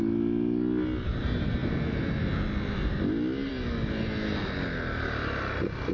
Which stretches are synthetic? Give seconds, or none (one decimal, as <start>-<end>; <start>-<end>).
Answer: none

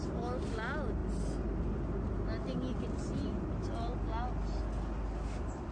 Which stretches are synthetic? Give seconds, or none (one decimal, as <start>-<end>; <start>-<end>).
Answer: none

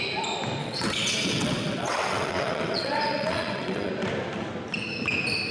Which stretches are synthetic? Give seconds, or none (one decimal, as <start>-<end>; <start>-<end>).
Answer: 0.6-3.9

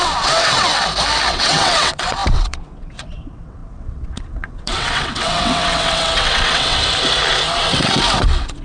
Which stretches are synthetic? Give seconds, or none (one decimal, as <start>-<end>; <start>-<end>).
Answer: 0.0-0.7; 1.3-6.8; 7.6-8.6

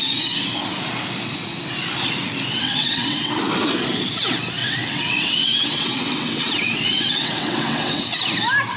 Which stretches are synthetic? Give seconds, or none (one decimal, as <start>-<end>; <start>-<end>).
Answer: 2.6-3.4; 4.6-8.2

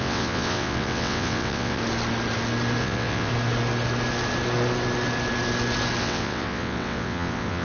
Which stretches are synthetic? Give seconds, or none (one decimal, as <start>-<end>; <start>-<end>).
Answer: 0.0-1.8; 2.8-3.3; 6.0-7.6